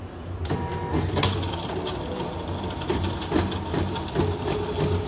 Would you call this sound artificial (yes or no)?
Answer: no